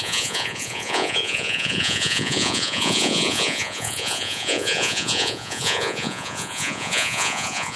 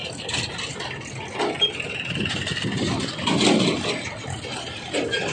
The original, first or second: second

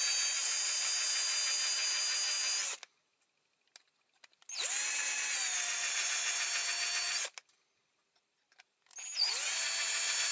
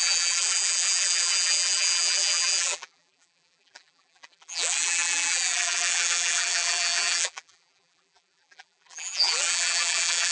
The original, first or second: first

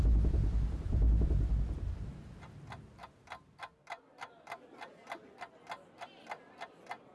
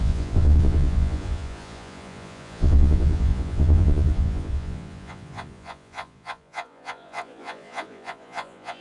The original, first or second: first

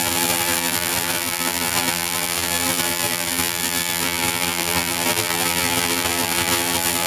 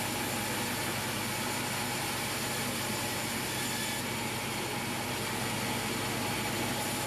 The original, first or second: second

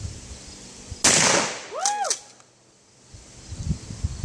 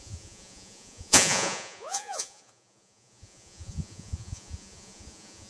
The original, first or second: first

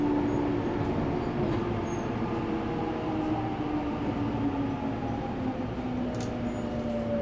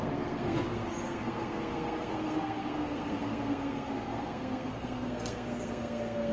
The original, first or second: first